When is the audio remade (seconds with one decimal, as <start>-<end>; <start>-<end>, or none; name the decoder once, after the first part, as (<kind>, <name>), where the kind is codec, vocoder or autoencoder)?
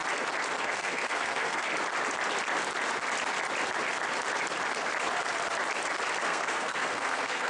0.6-1.7 (codec, SNAC); 6.2-7.5